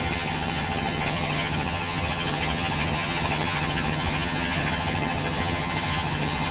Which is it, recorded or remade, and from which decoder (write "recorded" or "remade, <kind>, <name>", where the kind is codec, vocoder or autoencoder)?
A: remade, vocoder, HiFi-GAN